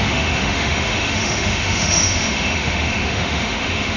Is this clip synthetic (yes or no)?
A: yes